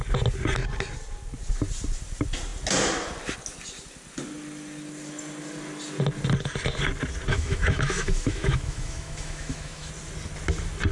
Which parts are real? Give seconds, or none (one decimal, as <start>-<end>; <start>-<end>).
0.0-7.3; 9.9-10.9